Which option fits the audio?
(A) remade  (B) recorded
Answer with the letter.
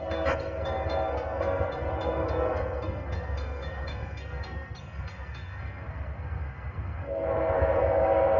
A